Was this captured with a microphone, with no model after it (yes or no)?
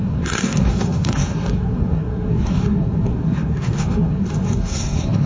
no